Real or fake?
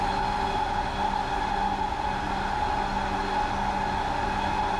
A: real